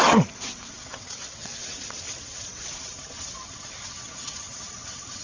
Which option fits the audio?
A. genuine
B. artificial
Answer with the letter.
B